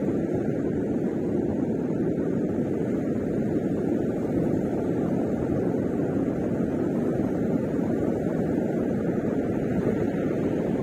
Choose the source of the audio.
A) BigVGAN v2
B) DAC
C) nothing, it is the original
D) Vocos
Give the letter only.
A